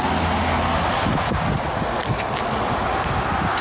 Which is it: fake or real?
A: real